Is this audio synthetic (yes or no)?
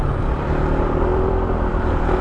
yes